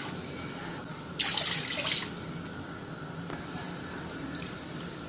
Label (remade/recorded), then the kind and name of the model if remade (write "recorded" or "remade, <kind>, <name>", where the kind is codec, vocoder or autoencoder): recorded